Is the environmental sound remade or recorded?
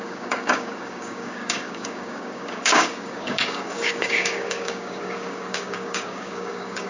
remade